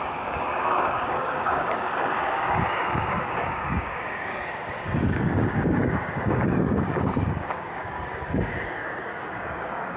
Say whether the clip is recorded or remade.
remade